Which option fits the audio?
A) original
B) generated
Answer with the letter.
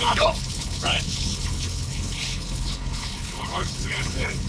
B